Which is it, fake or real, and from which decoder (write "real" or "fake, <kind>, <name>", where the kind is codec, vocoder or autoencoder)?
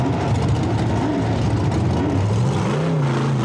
real